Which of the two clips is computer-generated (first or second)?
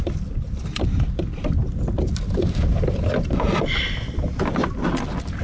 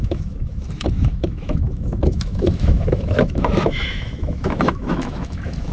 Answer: second